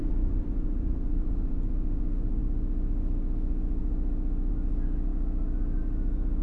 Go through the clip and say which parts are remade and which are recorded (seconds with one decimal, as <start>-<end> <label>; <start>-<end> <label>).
0.0-2.4 remade; 2.4-6.4 recorded